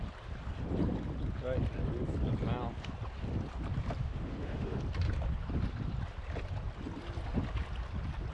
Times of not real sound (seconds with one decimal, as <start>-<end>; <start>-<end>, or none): 4.0-4.8